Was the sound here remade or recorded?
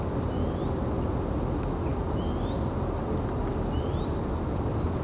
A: recorded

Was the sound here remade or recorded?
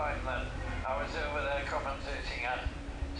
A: recorded